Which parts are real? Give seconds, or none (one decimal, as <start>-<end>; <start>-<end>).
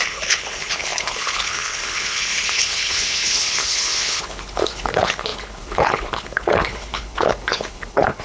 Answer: none